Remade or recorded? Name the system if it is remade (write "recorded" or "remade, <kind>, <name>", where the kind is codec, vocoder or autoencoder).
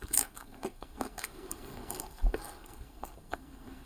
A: remade, codec, SNAC